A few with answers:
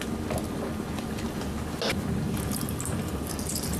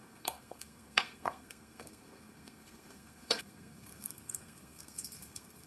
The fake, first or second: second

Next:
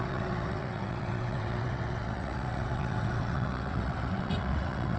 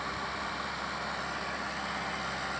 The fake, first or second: first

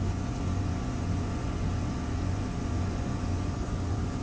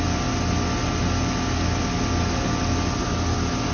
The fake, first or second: first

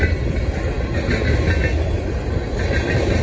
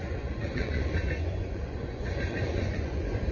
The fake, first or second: second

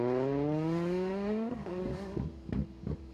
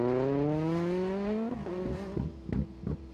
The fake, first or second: first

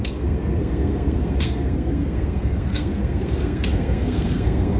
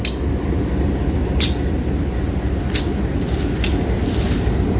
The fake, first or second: first